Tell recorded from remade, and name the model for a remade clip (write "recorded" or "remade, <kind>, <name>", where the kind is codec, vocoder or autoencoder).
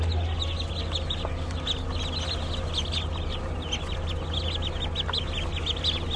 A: recorded